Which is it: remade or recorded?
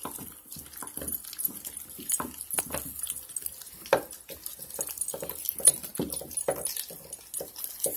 recorded